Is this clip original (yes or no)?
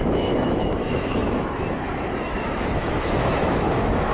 no